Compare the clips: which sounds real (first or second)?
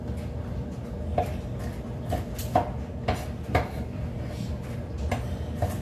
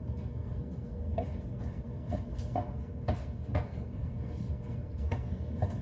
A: first